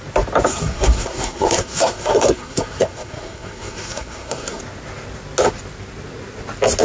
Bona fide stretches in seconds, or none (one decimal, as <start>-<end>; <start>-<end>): 0.0-0.5; 4.6-6.8